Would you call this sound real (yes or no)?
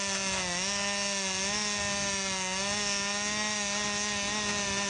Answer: yes